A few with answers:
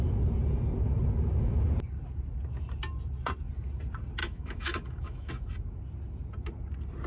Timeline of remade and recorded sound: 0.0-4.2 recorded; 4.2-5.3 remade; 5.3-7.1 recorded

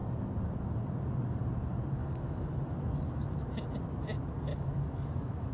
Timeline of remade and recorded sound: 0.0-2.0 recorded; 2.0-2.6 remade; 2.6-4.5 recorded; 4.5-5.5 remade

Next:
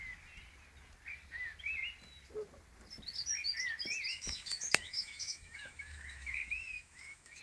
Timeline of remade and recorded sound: 0.0-4.1 recorded; 4.1-7.4 remade